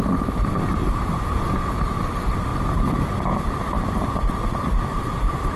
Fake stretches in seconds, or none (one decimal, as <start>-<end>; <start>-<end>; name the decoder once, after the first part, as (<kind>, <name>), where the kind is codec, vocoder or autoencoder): 0.5-2.1 (vocoder, BigVGAN v2); 2.5-5.6